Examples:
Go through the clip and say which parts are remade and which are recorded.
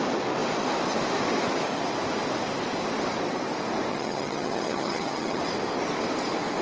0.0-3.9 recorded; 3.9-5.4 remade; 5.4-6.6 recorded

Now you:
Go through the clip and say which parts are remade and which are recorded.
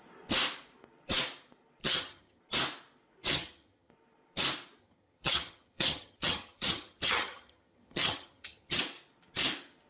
0.0-1.8 recorded; 1.8-2.4 remade; 2.4-3.3 recorded; 3.3-3.9 remade; 3.9-4.8 recorded; 4.8-8.8 remade; 8.8-9.9 recorded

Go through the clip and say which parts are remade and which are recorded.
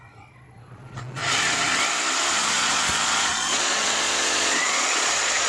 0.0-1.2 remade; 1.2-2.3 recorded; 2.3-5.5 remade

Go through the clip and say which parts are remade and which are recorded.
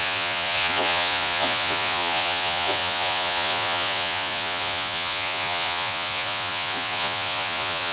0.0-7.9 remade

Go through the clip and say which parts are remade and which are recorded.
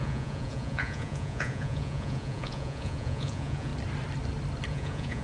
0.0-3.7 remade; 3.7-4.7 recorded; 4.7-5.2 remade